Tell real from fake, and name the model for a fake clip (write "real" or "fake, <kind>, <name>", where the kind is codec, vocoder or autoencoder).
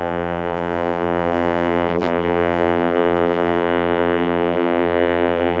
fake, vocoder, BigVGAN v2